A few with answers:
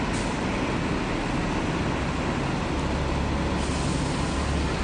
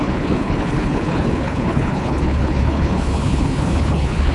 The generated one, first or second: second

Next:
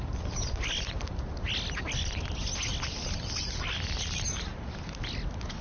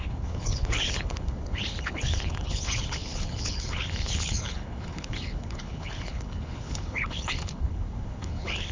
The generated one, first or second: second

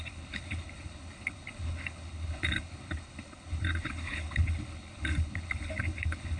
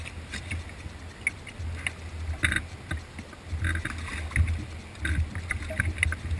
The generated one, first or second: first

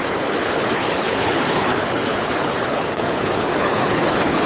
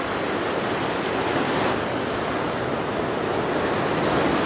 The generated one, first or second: first